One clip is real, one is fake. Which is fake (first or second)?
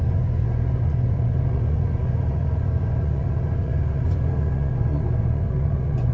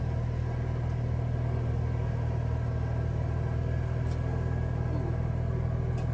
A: first